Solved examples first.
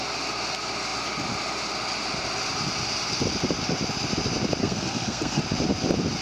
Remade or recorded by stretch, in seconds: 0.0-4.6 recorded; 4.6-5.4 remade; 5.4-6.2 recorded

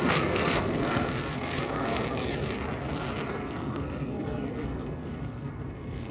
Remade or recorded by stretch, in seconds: 0.0-2.3 remade; 2.3-3.3 recorded; 3.3-6.1 remade

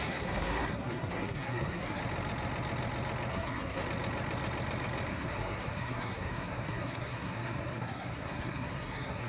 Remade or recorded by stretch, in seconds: 0.0-2.0 remade; 2.0-3.3 recorded; 3.3-3.8 remade; 3.8-5.1 recorded; 5.1-9.3 remade